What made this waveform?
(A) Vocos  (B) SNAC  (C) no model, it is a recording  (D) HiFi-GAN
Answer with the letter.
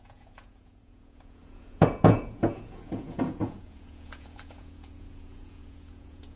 A